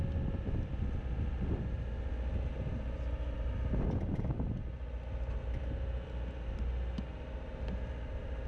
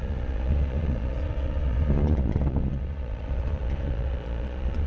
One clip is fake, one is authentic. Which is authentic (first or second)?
first